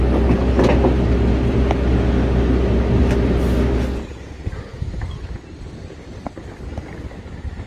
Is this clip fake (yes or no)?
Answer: no